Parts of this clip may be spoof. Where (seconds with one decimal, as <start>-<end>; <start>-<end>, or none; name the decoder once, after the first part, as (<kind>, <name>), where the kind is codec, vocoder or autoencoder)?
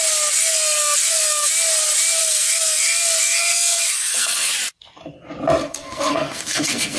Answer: 0.4-1.5 (codec, SNAC); 2.2-4.5; 5.6-7.0